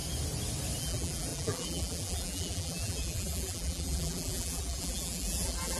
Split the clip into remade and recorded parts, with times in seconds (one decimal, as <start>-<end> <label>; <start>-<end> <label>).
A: 0.0-0.8 recorded; 0.8-5.8 remade